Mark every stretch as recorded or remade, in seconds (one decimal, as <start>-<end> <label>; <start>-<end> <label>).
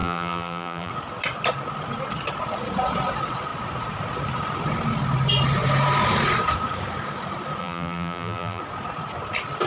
0.0-0.9 remade; 0.9-7.6 recorded; 7.6-8.6 remade; 8.6-9.7 recorded